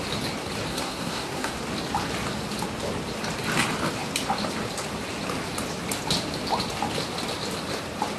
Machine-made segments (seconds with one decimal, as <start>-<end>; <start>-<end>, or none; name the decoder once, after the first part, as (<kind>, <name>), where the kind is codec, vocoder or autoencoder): 0.7-1.5 (codec, SNAC)